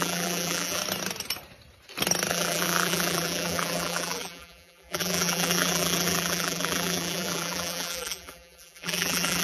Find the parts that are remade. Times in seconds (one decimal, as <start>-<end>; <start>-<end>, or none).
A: 0.0-0.8; 2.3-9.4